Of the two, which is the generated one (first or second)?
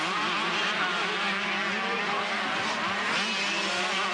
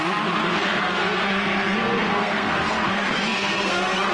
second